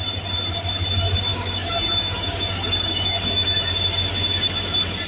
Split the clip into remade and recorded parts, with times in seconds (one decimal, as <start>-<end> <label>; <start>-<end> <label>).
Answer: 0.0-1.3 recorded; 1.3-3.7 remade; 3.7-5.1 recorded